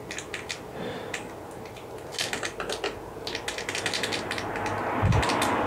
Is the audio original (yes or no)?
yes